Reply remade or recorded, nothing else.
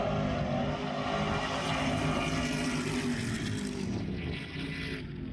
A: recorded